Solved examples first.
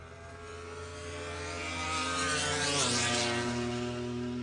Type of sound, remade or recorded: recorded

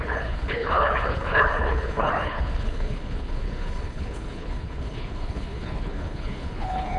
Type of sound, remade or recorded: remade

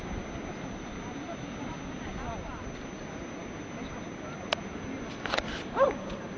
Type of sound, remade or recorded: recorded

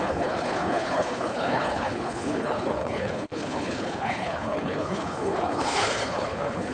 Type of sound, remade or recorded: remade